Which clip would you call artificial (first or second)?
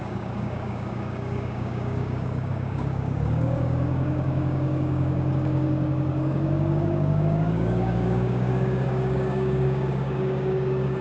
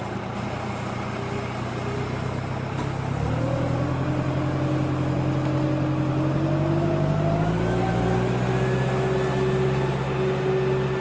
first